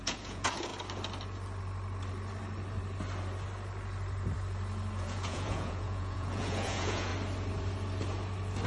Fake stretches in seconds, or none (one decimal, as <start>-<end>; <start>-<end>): 0.0-0.7; 5.0-7.1

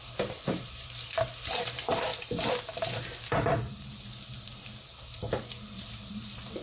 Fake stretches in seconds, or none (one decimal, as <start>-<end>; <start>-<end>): 0.0-2.1; 4.4-6.6